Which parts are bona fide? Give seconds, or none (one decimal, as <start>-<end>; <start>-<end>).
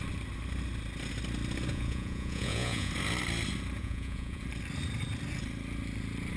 0.0-1.7; 2.9-3.8; 4.4-6.4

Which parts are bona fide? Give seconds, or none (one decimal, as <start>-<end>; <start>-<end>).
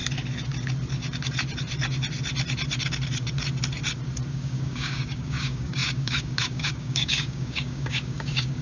0.0-4.3